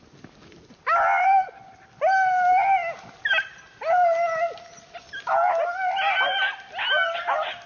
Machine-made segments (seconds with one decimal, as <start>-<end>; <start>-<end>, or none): none